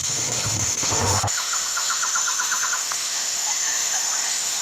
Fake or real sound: fake